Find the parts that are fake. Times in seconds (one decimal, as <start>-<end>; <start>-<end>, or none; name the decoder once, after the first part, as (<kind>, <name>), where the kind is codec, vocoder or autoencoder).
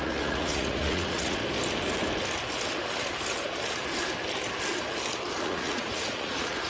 0.0-1.4 (vocoder, Vocos); 5.4-6.7